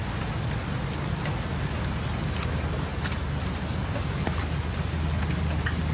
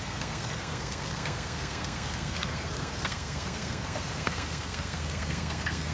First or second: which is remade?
second